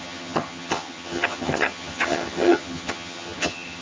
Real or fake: fake